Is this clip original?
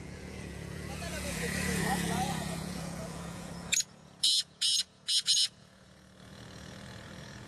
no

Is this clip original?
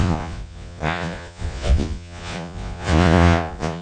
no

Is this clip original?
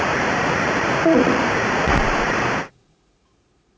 no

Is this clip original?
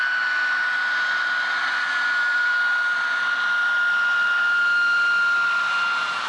yes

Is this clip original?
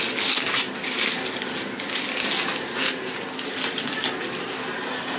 yes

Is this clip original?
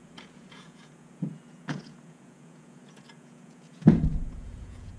no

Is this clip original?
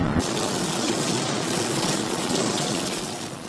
no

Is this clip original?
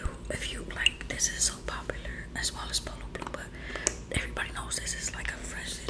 yes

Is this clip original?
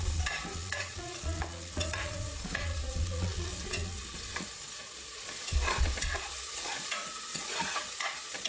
no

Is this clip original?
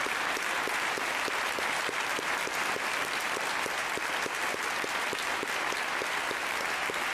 yes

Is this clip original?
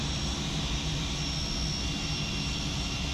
yes